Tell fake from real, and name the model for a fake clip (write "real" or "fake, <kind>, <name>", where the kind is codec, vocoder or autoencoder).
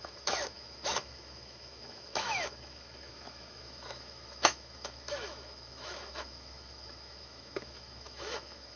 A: fake, autoencoder, DAC-VAE